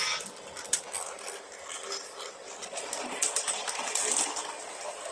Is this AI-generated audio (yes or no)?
no